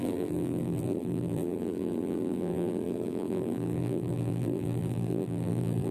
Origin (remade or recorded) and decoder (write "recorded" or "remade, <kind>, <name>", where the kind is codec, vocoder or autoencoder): remade, vocoder, BigVGAN v2